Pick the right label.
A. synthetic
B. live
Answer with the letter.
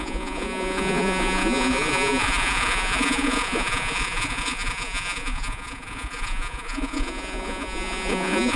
A